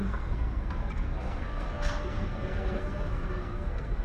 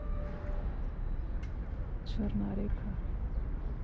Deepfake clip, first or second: first